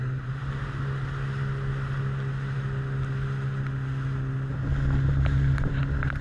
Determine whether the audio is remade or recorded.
recorded